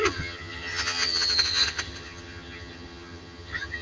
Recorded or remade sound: remade